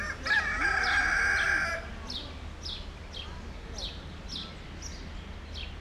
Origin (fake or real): real